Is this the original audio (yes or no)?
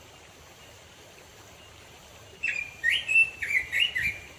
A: no